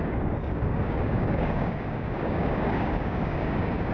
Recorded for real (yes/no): no